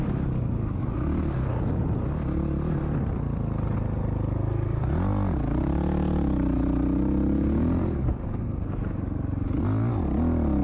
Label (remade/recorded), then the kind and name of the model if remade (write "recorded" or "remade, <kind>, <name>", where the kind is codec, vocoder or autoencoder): recorded